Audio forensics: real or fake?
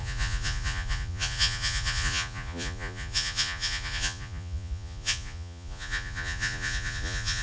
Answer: fake